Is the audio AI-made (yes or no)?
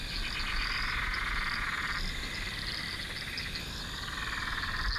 no